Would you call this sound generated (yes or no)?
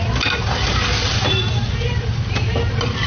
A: no